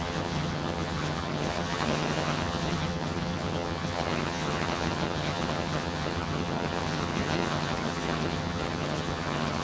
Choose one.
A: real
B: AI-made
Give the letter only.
B